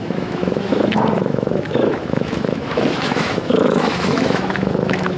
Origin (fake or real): fake